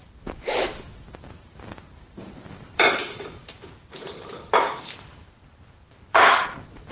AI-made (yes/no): yes